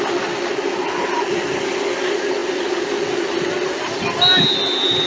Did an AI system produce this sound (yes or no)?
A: no